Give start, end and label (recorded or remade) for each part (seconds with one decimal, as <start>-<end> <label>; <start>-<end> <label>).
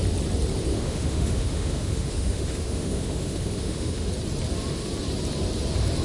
0.0-0.7 recorded; 0.7-4.1 remade; 4.1-6.0 recorded